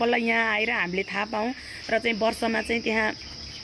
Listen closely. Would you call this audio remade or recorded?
recorded